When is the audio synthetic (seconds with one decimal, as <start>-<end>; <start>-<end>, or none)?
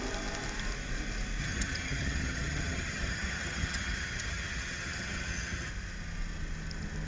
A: 1.4-5.7